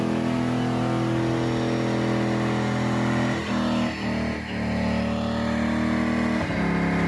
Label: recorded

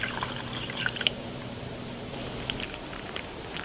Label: remade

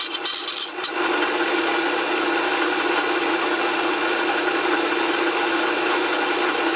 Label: recorded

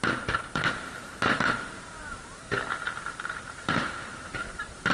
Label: remade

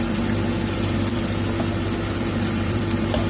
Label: remade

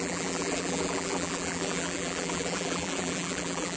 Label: remade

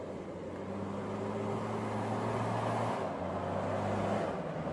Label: recorded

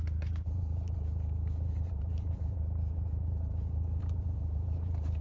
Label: remade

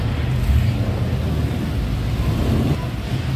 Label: recorded